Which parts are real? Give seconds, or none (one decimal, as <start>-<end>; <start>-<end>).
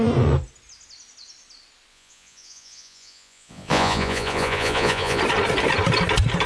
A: 0.0-1.9; 5.2-6.5